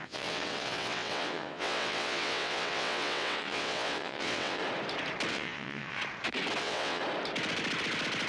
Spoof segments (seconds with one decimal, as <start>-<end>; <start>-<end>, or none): 0.0-4.6; 5.3-6.0; 6.6-7.0